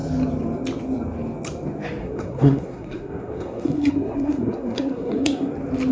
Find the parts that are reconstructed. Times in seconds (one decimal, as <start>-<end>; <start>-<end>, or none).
2.0-5.5